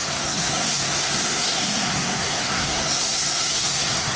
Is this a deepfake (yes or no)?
yes